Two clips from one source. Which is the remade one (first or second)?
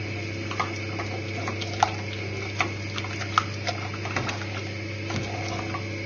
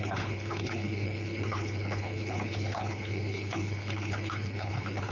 second